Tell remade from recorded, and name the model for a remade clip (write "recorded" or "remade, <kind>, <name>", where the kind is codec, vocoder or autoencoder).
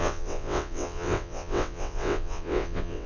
remade, vocoder, WaveNeXt